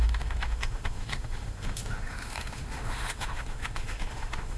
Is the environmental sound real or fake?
fake